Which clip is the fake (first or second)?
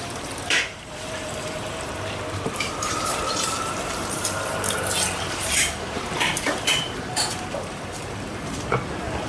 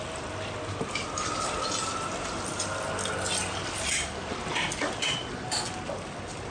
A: first